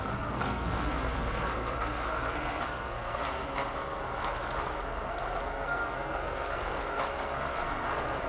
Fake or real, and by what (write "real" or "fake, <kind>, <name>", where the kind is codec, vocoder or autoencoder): fake, codec, SNAC